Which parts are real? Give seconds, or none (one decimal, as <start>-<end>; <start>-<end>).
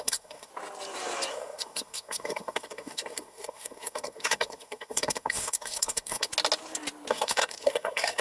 0.5-1.3; 6.3-7.1